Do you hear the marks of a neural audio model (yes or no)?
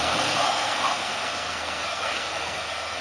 yes